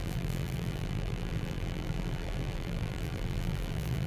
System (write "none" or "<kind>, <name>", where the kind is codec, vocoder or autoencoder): vocoder, BigVGAN v2